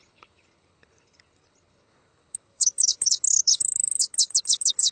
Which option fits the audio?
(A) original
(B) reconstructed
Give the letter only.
B